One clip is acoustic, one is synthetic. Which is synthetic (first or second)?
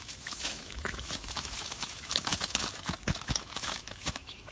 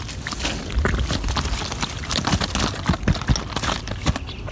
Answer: first